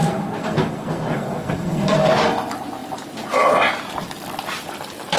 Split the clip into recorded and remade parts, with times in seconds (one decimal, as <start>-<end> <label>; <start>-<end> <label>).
0.0-2.1 remade; 2.1-5.2 recorded